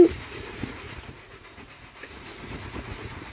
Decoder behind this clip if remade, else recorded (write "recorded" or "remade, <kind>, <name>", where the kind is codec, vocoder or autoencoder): remade, vocoder, Vocos